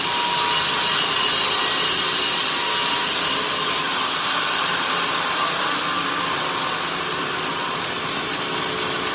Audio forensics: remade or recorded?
recorded